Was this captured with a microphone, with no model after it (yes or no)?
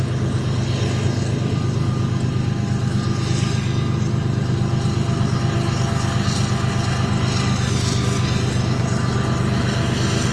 yes